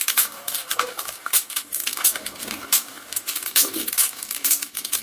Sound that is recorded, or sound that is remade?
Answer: remade